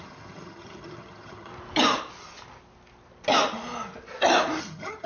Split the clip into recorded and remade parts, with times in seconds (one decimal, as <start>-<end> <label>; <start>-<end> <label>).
0.0-1.5 remade; 1.5-4.6 recorded; 4.6-5.1 remade